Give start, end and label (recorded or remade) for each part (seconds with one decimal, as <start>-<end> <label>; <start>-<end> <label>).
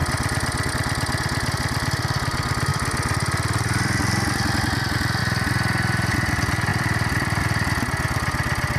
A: 0.0-0.7 remade; 0.7-2.7 recorded; 2.7-5.2 remade; 5.2-6.7 recorded; 6.7-7.4 remade; 7.4-8.8 recorded